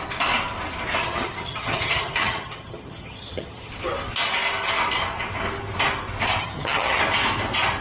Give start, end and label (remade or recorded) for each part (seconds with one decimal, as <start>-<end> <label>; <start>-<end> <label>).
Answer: 0.0-1.0 recorded; 1.0-3.7 remade; 3.7-6.4 recorded; 6.4-7.0 remade; 7.0-7.8 recorded